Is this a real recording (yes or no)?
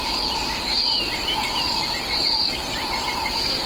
no